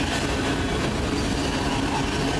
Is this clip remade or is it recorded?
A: recorded